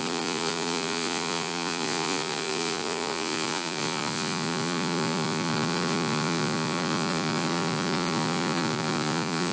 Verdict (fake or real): fake